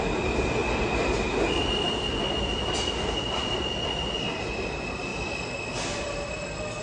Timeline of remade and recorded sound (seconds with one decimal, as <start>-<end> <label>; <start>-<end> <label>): 0.0-0.6 recorded; 0.6-3.8 remade; 3.8-5.1 recorded; 5.1-6.0 remade; 6.0-6.8 recorded